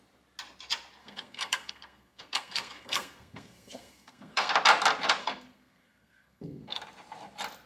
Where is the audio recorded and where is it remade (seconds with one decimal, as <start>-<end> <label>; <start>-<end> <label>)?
0.0-1.0 recorded; 1.0-4.5 remade; 4.5-5.2 recorded; 5.2-6.8 remade; 6.8-7.7 recorded

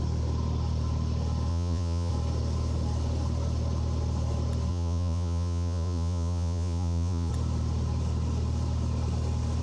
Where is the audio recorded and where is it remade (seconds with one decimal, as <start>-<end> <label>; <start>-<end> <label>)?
0.0-1.5 recorded; 1.5-2.1 remade; 2.1-4.7 recorded; 4.7-7.3 remade; 7.3-9.6 recorded

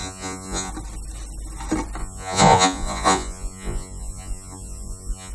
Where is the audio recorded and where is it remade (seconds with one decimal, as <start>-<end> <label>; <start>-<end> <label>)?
0.0-0.7 remade; 0.7-2.0 recorded; 2.0-5.3 remade

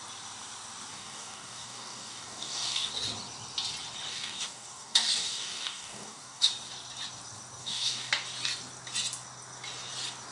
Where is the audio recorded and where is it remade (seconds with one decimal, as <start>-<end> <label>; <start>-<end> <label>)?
0.0-0.9 recorded; 0.9-2.9 remade; 2.9-4.1 recorded; 4.1-6.5 remade; 6.5-7.6 recorded; 7.6-8.1 remade; 8.1-10.3 recorded

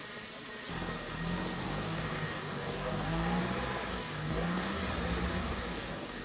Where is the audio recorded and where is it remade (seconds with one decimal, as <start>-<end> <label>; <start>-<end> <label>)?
0.0-1.6 recorded; 1.6-3.4 remade; 3.4-3.9 recorded; 3.9-4.9 remade; 4.9-5.4 recorded; 5.4-6.2 remade

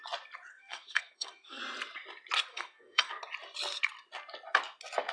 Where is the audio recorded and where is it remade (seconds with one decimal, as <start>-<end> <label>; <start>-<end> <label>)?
0.0-0.5 recorded; 0.5-1.6 remade; 1.6-2.5 recorded; 2.5-3.1 remade; 3.1-5.1 recorded